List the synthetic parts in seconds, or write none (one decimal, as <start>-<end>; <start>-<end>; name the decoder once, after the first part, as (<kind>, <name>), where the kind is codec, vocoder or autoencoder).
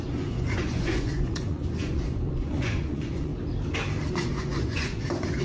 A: 0.0-3.3 (vocoder, Vocos); 4.1-5.4